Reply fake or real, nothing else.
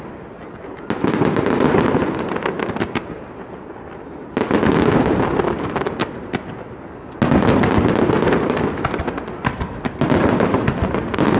real